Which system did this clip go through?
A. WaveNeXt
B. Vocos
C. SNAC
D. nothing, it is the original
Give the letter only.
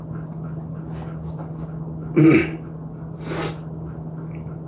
D